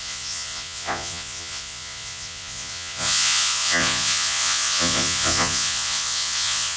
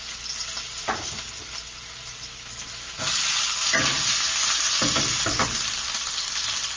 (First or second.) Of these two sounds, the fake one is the first